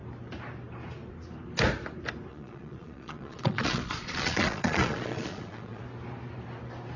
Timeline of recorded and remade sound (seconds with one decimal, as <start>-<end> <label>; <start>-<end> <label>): 0.0-2.3 recorded; 2.3-5.8 remade; 5.8-7.0 recorded